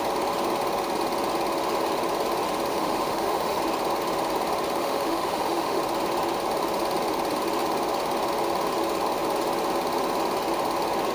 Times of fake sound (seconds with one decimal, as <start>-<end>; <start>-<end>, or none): 2.7-3.6; 4.8-5.8

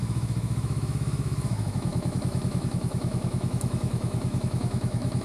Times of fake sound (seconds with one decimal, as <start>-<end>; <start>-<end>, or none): 0.0-5.2

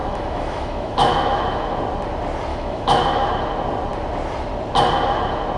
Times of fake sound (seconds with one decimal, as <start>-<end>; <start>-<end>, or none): 0.0-1.8; 2.5-3.3

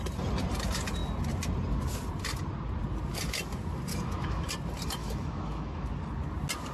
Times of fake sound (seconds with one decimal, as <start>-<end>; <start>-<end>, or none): 3.9-4.5; 5.0-5.9

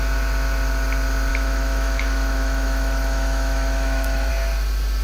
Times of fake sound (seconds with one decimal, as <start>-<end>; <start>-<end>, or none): 1.3-4.3

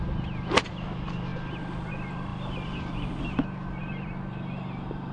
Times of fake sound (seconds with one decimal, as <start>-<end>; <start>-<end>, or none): none

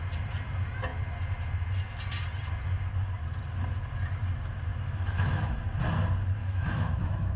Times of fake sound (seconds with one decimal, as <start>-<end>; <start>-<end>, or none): 4.7-5.6; 6.4-7.4

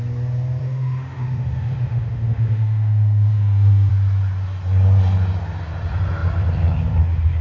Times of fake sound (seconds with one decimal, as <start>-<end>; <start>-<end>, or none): 0.6-3.9